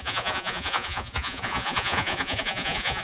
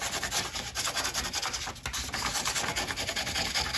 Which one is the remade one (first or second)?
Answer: first